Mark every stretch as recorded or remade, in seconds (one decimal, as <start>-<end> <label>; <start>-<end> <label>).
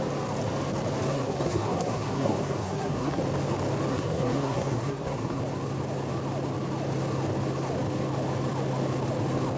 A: 0.0-1.1 recorded; 1.1-3.2 remade; 3.2-3.9 recorded; 3.9-5.4 remade; 5.4-9.6 recorded